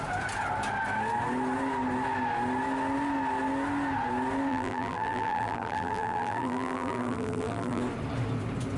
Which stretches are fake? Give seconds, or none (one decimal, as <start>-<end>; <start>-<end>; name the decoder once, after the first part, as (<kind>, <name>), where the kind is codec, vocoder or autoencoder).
4.5-7.8 (vocoder, BigVGAN v2)